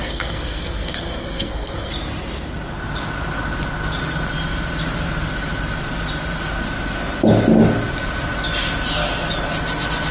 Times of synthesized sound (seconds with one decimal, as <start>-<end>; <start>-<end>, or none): 0.0-1.9